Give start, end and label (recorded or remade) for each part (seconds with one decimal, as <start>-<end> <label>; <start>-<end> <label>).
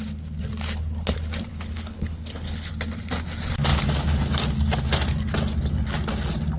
0.0-1.5 recorded; 1.5-2.7 remade; 2.7-6.6 recorded